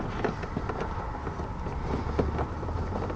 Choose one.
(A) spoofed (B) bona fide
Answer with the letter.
B